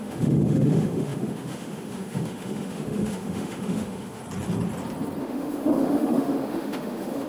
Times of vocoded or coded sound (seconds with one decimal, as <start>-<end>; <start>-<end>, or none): 0.0-4.2; 5.2-7.3